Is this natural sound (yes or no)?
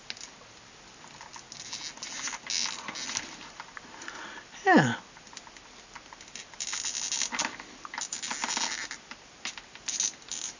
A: yes